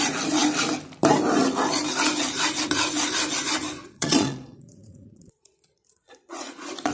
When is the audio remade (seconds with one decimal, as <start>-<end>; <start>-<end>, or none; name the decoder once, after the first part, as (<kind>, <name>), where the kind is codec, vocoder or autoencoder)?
3.8-6.9 (vocoder, Vocos)